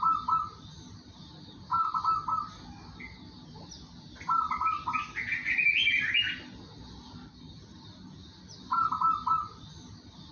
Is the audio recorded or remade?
recorded